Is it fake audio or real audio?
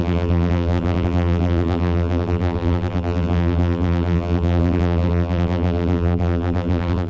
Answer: fake